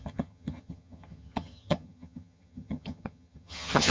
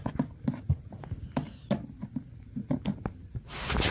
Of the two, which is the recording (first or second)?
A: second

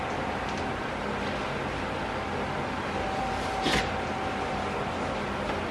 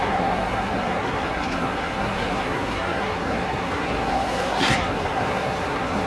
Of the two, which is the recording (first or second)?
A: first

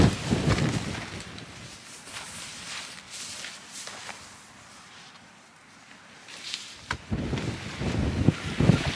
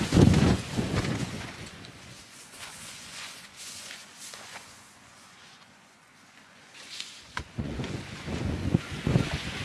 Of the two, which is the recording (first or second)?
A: first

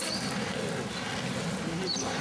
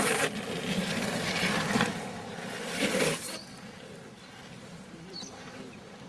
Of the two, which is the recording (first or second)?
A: first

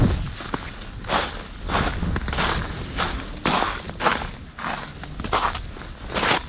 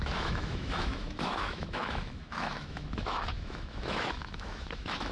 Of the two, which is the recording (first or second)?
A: first